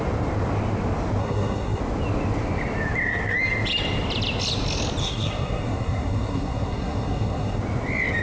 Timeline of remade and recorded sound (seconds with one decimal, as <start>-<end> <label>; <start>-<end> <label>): 0.0-1.2 recorded; 1.2-1.8 remade; 1.8-5.0 recorded; 5.0-7.6 remade; 7.6-8.2 recorded